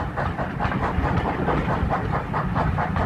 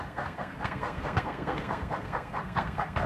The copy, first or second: second